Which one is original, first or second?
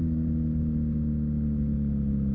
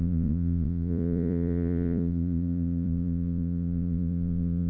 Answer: first